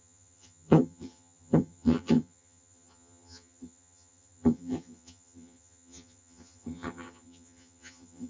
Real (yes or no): no